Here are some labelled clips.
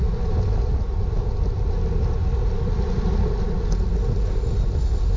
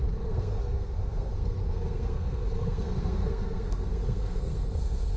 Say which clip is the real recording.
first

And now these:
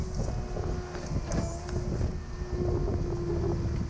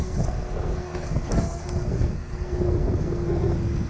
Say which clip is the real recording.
first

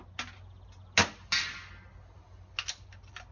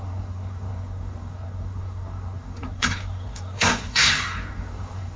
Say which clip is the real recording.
first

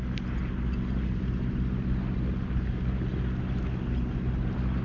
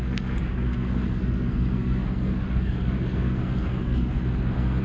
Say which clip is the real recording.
first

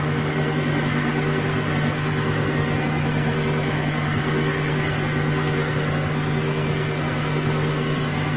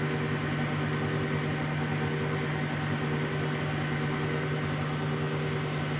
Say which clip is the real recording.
second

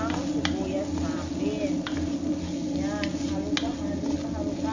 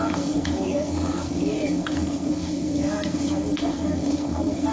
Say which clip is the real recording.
first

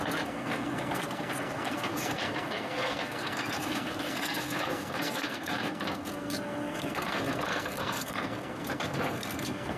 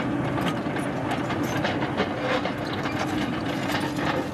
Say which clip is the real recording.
second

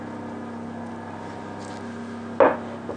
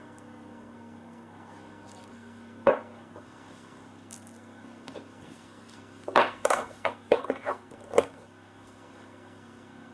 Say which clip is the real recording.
first